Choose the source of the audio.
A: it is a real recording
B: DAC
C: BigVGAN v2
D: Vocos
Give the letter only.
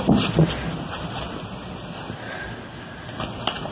C